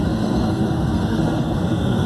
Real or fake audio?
fake